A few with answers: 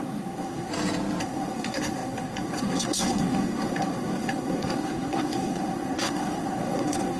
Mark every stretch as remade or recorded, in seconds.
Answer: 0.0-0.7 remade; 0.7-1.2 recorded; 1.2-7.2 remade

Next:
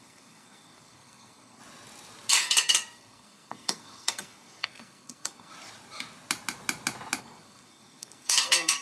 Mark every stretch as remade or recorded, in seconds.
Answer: 0.0-1.6 remade; 1.6-2.3 recorded; 2.3-5.5 remade; 5.5-7.2 recorded; 7.2-8.8 remade

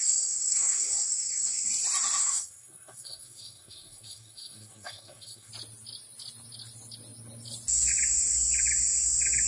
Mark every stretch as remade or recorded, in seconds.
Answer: 0.0-1.7 remade; 1.7-2.2 recorded; 2.2-5.5 remade; 5.5-9.5 recorded

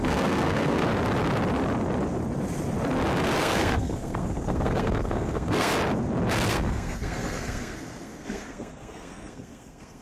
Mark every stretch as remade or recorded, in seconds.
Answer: 0.0-0.9 remade; 0.9-3.4 recorded; 3.4-5.7 remade; 5.7-6.5 recorded; 6.5-10.0 remade